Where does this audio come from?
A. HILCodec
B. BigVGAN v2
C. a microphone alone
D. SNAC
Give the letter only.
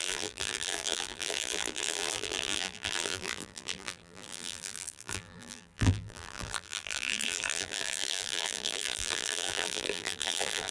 B